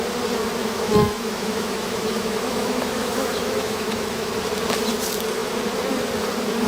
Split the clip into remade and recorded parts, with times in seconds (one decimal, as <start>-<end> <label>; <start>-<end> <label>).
0.0-0.6 recorded; 0.6-4.3 remade; 4.3-6.7 recorded